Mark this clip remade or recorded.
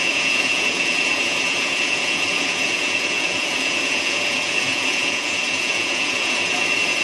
remade